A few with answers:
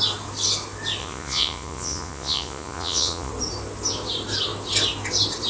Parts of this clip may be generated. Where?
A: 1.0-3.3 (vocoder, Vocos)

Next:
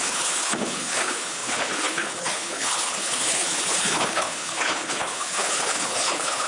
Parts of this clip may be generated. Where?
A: 0.0-6.5 (codec, HILCodec)